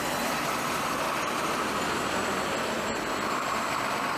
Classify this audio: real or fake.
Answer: real